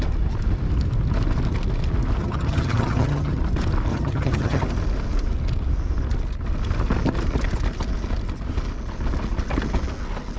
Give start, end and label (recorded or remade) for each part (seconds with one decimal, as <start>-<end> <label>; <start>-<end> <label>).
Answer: 0.0-2.2 recorded; 2.2-3.4 remade; 3.4-3.9 recorded; 3.9-4.6 remade; 4.6-10.4 recorded